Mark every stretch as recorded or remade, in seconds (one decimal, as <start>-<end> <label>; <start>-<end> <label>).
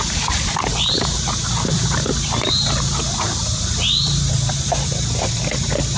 0.0-0.7 recorded; 0.7-4.3 remade; 4.3-6.0 recorded